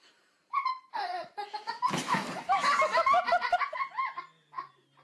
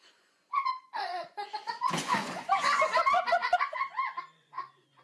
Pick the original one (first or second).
first